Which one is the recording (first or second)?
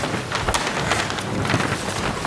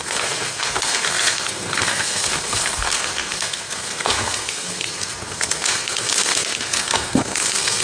first